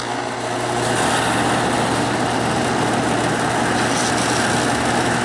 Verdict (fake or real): real